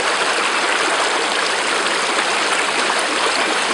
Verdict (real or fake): real